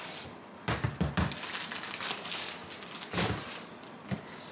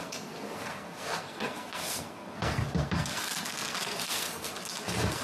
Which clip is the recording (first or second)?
first